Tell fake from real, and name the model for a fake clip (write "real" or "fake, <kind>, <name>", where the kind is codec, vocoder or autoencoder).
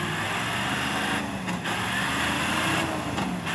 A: real